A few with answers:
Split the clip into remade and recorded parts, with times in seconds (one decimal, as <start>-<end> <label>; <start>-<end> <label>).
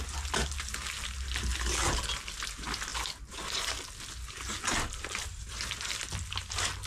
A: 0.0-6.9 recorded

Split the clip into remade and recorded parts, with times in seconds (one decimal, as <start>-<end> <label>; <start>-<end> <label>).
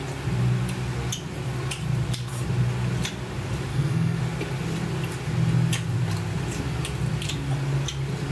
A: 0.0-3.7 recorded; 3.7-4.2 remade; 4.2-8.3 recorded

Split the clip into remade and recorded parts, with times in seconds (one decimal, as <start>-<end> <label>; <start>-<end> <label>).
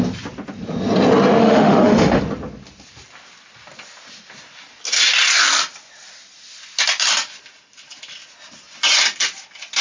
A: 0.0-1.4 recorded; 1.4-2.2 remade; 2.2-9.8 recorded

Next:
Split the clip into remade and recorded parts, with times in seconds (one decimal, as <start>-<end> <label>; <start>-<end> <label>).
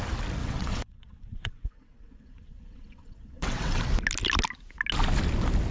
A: 0.0-0.4 recorded; 0.4-3.8 remade; 3.8-5.7 recorded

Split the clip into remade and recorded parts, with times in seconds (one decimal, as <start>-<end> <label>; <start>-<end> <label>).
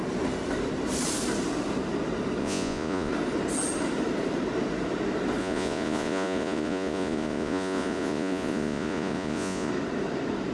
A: 0.0-2.4 recorded; 2.4-3.1 remade; 3.1-5.4 recorded; 5.4-9.7 remade; 9.7-10.5 recorded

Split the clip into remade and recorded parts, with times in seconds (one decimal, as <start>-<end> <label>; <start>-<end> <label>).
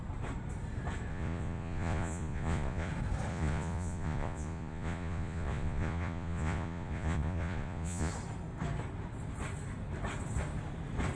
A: 0.0-1.1 recorded; 1.1-2.9 remade; 2.9-3.3 recorded; 3.3-8.1 remade; 8.1-11.2 recorded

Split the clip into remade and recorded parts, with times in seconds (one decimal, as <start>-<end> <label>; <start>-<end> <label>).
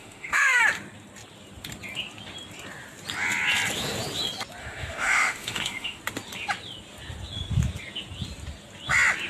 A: 0.0-0.6 remade; 0.6-4.6 recorded; 4.6-6.0 remade; 6.0-9.3 recorded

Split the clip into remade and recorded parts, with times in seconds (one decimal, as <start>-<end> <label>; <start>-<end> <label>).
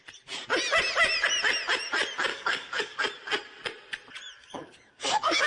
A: 0.0-2.3 recorded; 2.3-3.0 remade; 3.0-4.4 recorded; 4.4-5.5 remade